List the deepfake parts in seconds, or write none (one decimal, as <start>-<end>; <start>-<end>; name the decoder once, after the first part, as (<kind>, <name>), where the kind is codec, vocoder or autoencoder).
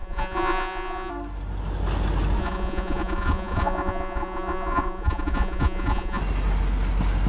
0.0-1.1 (vocoder, Vocos); 2.4-6.2